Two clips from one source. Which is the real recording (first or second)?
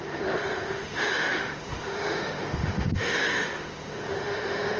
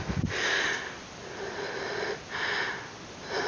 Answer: second